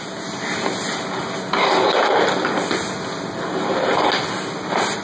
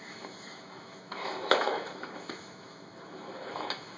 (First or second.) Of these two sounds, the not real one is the second